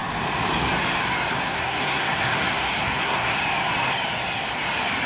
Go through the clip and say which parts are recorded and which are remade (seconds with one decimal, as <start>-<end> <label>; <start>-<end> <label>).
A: 0.0-1.3 recorded; 1.3-3.4 remade; 3.4-5.1 recorded